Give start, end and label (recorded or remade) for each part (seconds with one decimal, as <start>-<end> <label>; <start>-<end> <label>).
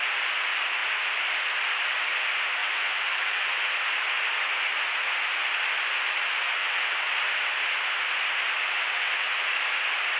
0.0-2.6 recorded; 2.6-3.7 remade; 3.7-6.6 recorded; 6.6-7.1 remade; 7.1-8.6 recorded; 8.6-9.5 remade; 9.5-10.2 recorded